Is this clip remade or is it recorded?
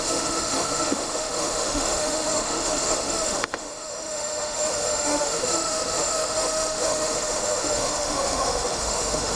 remade